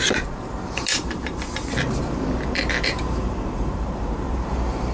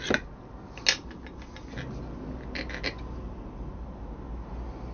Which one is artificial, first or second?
first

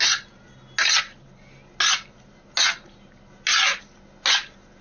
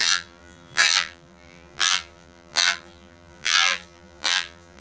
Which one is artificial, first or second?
second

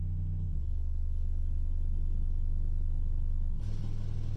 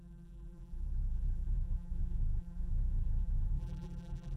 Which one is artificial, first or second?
second